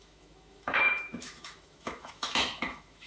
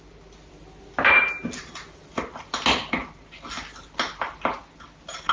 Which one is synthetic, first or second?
first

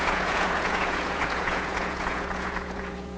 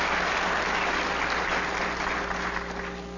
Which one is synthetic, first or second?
first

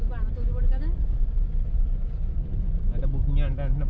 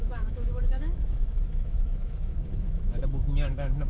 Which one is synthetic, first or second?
second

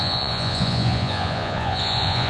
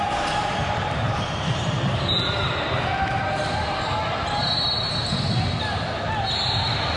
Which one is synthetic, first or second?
first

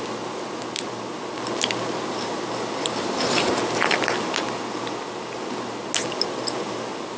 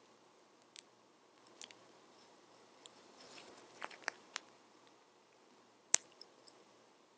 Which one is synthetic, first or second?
second